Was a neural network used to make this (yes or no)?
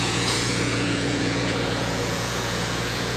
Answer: yes